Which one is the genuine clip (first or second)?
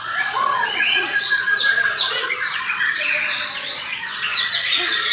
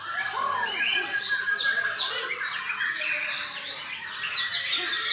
second